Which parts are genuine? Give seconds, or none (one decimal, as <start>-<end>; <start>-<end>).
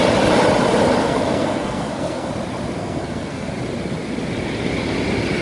0.0-1.0; 2.3-2.8; 3.5-5.4